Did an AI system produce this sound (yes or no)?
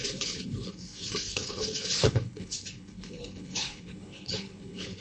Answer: yes